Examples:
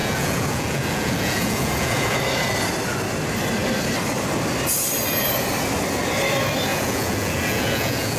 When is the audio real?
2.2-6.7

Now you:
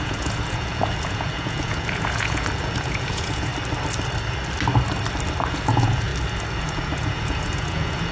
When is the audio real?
3.5-5.5; 6.1-6.6

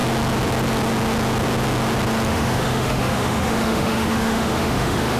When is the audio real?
0.0-2.3

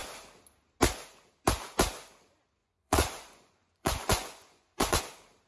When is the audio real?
0.0-2.6; 5.0-5.5

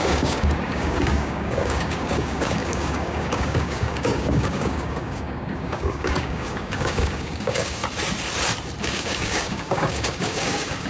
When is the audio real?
7.8-8.8

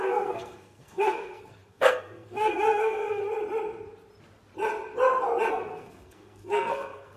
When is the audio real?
3.2-5.5

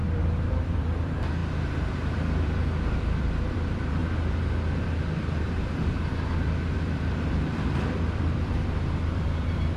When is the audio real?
1.4-2.1; 4.0-5.4

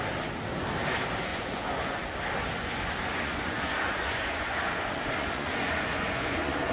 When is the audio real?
0.0-1.3; 2.1-2.6